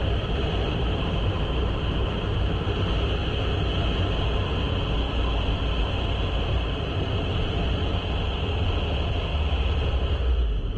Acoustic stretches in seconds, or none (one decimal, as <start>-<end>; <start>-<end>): 3.2-5.8; 7.9-8.6